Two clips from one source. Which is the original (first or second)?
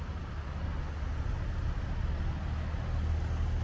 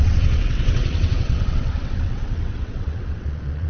first